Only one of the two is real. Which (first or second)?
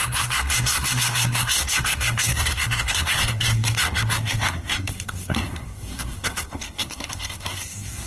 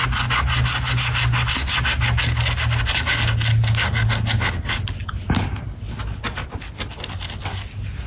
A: second